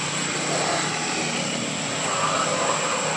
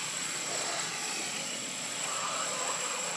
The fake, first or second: second